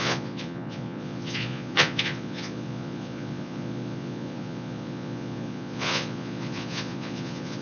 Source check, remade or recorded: remade